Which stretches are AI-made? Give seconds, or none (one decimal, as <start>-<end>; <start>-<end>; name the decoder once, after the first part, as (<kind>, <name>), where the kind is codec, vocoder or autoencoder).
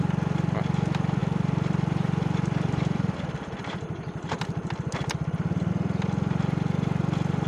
1.2-5.7 (vocoder, BigVGAN v2)